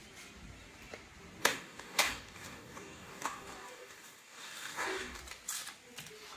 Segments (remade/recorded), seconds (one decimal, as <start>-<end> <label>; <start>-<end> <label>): 0.0-1.4 recorded; 1.4-5.2 remade; 5.2-6.4 recorded